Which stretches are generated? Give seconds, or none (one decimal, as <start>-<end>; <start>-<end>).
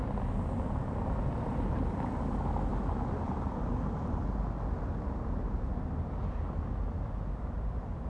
none